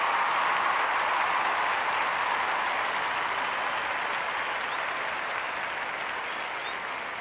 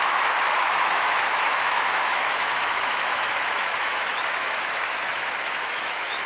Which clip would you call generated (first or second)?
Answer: second